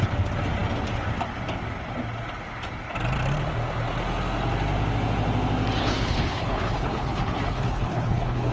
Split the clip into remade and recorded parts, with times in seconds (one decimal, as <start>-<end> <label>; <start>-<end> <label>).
0.0-5.8 recorded; 5.8-8.5 remade